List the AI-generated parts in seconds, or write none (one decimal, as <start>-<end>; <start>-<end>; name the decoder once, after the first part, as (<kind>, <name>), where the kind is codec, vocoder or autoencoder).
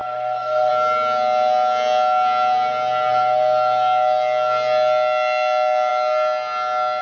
0.0-0.7 (codec, SNAC)